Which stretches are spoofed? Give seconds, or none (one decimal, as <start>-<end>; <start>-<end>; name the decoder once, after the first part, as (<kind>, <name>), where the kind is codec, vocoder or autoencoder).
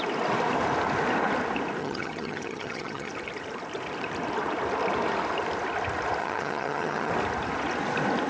1.8-3.1 (vocoder, HiFi-GAN); 6.2-7.1